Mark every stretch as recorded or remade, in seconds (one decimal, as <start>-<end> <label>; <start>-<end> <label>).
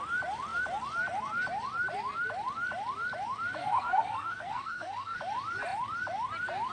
0.0-3.6 recorded; 3.6-5.2 remade; 5.2-6.7 recorded